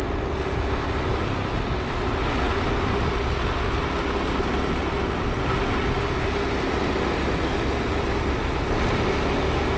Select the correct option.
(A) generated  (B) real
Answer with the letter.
B